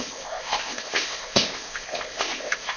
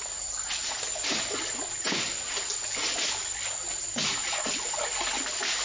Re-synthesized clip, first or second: first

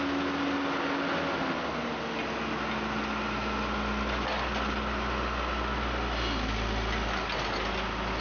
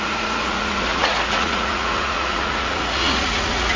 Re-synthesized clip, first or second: second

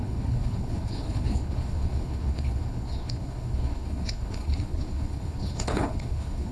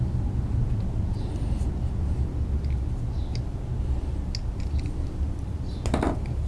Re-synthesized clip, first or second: first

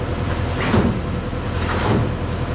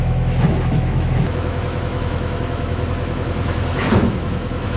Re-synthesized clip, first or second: second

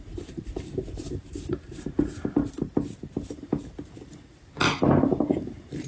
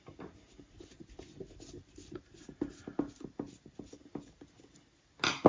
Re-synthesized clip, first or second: first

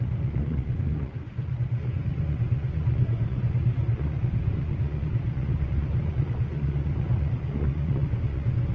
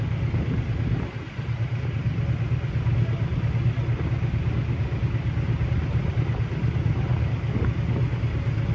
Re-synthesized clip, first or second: first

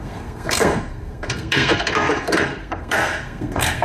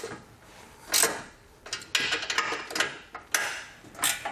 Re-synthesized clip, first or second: first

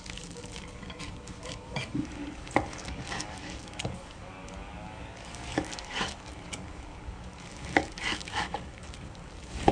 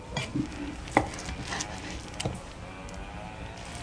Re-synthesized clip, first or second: first